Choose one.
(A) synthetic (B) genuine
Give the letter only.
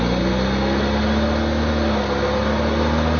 B